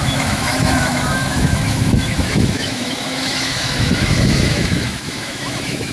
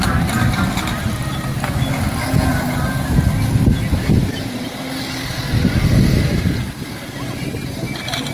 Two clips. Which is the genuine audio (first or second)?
second